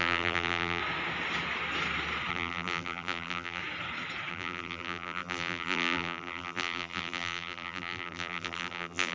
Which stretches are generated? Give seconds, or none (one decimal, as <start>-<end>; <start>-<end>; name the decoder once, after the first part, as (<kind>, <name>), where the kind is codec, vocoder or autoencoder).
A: 0.0-0.8 (vocoder, BigVGAN v2); 2.3-3.6; 4.3-9.1